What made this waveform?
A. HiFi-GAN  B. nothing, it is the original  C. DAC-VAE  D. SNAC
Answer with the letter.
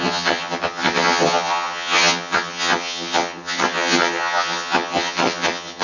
A